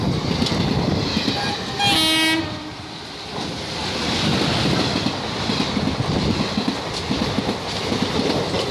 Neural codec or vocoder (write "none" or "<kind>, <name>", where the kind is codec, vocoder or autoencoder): none